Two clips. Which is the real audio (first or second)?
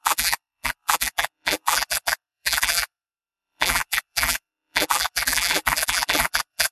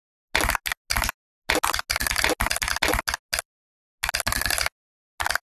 second